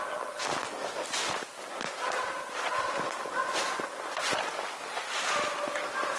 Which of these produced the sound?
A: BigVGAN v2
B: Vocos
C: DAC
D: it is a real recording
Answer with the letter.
D